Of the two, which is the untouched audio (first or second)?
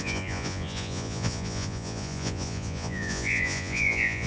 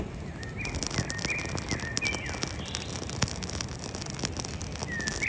second